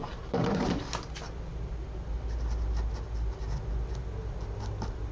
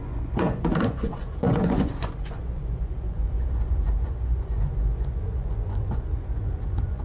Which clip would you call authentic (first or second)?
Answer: first